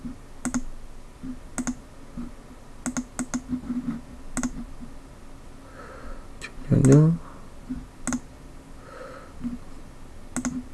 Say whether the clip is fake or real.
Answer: real